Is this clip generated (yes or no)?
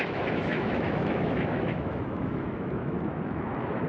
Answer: yes